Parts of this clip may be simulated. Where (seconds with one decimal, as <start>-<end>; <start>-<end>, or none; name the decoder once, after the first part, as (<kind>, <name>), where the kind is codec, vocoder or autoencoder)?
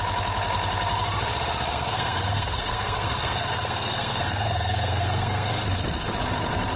1.7-5.5 (codec, SNAC)